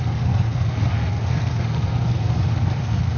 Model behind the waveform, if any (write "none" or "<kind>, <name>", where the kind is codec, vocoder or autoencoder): codec, SNAC